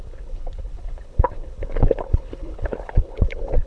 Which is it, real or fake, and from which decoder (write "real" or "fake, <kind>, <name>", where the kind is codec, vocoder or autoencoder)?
fake, codec, HILCodec